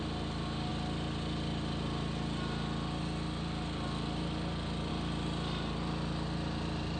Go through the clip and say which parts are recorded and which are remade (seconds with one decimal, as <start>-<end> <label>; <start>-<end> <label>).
0.0-7.0 recorded